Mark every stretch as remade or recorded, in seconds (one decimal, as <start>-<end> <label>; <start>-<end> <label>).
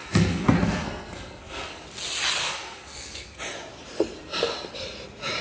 0.0-1.8 remade; 1.8-2.4 recorded; 2.4-3.4 remade; 3.4-5.4 recorded